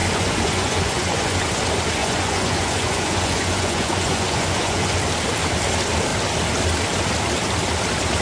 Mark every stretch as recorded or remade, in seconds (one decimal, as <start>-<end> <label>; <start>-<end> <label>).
0.0-1.6 remade; 1.6-2.0 recorded; 2.0-5.0 remade; 5.0-8.2 recorded